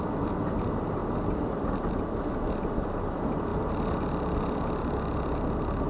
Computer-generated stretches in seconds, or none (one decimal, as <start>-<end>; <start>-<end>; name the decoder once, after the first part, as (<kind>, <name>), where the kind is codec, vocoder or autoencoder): none